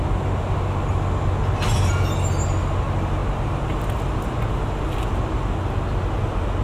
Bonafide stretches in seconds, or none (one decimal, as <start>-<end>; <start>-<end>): 0.0-6.6